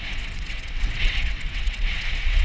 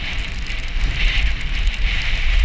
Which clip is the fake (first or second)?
first